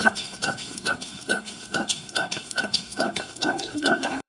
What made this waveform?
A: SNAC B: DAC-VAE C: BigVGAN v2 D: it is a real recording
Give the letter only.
A